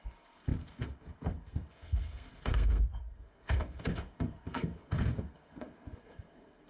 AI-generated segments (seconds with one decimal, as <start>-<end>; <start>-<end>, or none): 0.0-6.7